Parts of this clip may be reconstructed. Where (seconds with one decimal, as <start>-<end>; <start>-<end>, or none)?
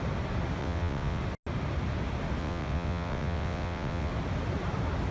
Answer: 0.6-1.2; 2.4-4.1